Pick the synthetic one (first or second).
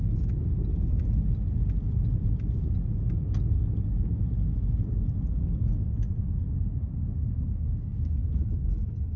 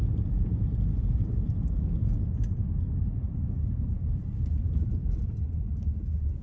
second